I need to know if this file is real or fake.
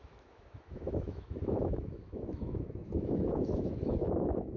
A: fake